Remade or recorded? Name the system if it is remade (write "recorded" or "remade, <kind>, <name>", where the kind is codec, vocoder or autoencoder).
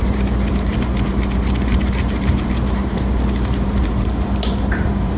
remade, vocoder, BigVGAN v2